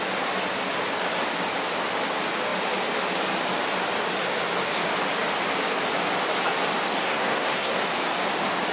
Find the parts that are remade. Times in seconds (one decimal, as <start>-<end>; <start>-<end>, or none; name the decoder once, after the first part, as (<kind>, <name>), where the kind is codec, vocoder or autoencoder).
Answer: 7.0-7.8 (codec, SNAC)